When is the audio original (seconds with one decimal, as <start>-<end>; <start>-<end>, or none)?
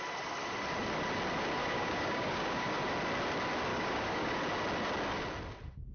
0.0-1.6; 2.8-3.7; 4.4-5.9